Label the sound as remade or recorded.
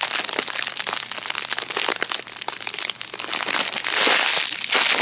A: recorded